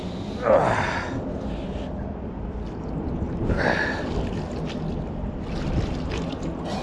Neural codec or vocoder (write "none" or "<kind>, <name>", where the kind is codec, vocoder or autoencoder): none